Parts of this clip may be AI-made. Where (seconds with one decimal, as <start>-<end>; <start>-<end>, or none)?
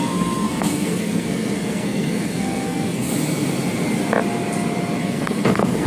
0.0-3.1; 5.0-5.9